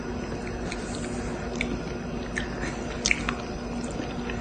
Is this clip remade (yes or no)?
no